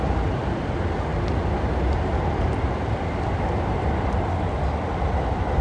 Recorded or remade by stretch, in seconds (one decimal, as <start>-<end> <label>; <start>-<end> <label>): 0.0-5.6 recorded

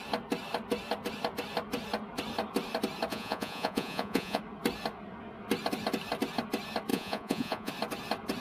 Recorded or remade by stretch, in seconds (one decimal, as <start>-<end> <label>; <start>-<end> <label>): 0.0-3.1 recorded; 3.1-4.4 remade; 4.4-6.9 recorded; 6.9-7.7 remade; 7.7-8.4 recorded

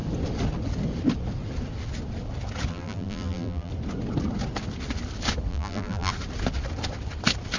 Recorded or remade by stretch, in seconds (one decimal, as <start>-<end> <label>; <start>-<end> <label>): 0.0-2.7 recorded; 2.7-3.7 remade; 3.7-5.5 recorded; 5.5-6.1 remade; 6.1-7.6 recorded

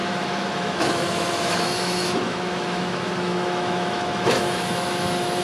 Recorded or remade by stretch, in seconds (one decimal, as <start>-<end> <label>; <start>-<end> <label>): 0.0-5.4 remade

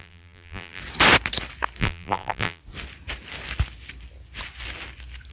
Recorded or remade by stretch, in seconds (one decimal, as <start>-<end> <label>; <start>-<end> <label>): 0.0-0.8 remade; 0.8-1.8 recorded; 1.8-2.6 remade; 2.6-5.3 recorded

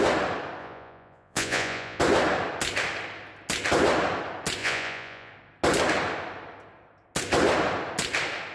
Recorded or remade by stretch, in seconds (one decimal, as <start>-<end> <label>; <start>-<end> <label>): 0.0-0.6 recorded; 0.6-2.0 remade; 2.0-4.6 recorded; 4.6-5.3 remade; 5.3-8.5 recorded

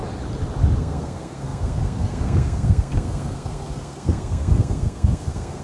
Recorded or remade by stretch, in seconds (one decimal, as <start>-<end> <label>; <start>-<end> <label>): 0.0-0.8 recorded; 0.8-5.6 remade

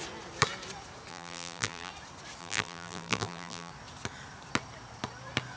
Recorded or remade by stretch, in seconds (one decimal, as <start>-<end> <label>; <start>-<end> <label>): 0.0-1.1 recorded; 1.1-1.9 remade; 1.9-2.4 recorded; 2.4-3.7 remade; 3.7-5.6 recorded